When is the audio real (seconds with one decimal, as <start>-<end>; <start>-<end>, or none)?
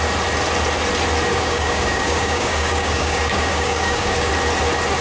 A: 0.0-1.3; 4.3-5.0